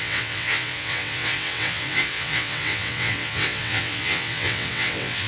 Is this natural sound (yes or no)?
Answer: no